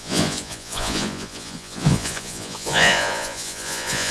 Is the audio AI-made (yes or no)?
yes